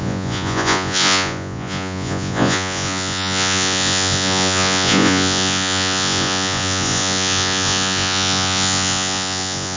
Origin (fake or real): fake